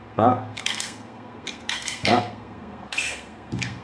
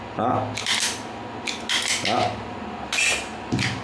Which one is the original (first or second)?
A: second